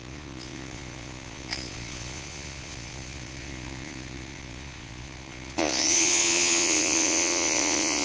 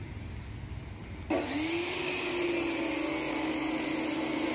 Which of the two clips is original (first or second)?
second